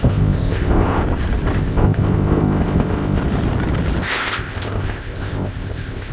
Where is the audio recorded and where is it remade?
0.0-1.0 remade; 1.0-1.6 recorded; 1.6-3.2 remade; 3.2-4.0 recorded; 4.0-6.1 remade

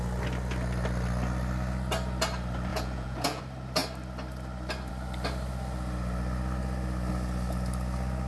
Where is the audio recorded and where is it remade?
0.0-2.7 recorded; 2.7-3.4 remade; 3.4-8.3 recorded

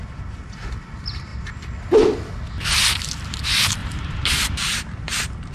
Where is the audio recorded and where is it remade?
0.0-3.8 recorded; 3.8-4.8 remade; 4.8-5.5 recorded